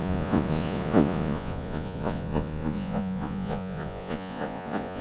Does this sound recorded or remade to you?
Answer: remade